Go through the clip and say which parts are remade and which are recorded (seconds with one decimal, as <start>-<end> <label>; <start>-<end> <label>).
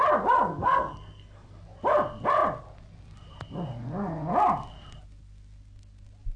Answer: 0.0-0.5 recorded; 0.5-1.6 remade; 1.6-6.4 recorded